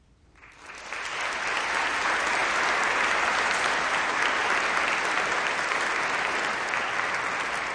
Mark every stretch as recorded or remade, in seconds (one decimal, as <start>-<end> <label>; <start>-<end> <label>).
0.0-7.7 recorded